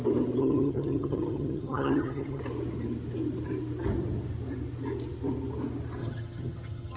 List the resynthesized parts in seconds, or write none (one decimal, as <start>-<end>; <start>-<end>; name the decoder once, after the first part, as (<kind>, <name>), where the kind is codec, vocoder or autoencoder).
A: 0.4-2.4 (vocoder, HiFi-GAN); 6.0-7.0